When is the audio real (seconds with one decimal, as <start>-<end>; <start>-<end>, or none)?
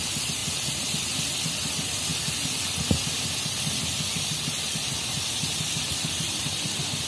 0.0-7.1